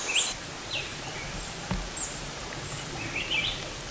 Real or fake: real